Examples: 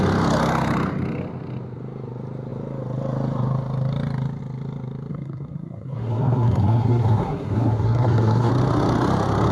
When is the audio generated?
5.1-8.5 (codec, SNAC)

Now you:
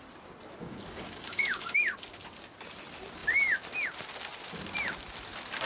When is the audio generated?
0.6-1.8 (codec, DAC)